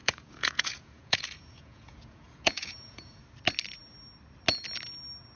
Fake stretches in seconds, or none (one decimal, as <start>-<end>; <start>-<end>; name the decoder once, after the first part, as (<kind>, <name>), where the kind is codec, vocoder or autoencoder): 0.0-3.2 (vocoder, Vocos)